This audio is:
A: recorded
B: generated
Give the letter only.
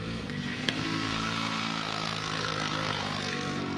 B